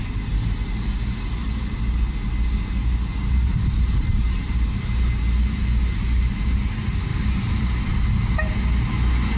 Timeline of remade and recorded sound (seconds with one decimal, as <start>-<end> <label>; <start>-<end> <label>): 0.0-2.8 recorded; 2.8-4.8 remade; 4.8-7.1 recorded; 7.1-7.7 remade; 7.7-9.4 recorded